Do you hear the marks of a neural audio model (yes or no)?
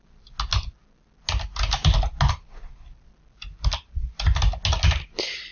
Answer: no